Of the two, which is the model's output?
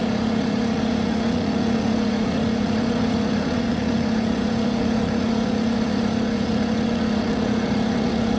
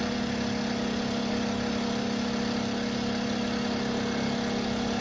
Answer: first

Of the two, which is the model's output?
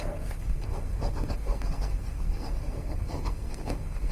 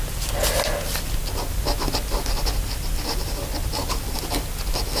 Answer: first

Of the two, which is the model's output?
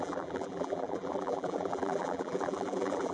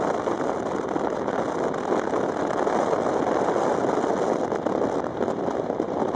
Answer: first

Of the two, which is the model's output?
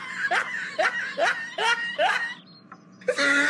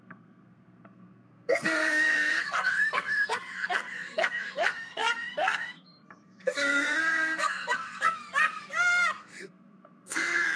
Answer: second